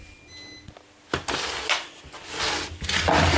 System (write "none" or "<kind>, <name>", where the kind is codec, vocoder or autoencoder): none